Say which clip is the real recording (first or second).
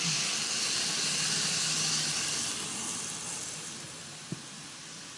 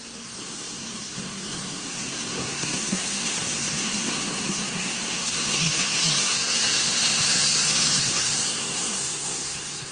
first